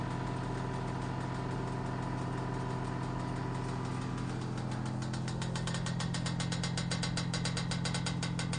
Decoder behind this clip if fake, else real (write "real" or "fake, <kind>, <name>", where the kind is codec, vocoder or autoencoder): real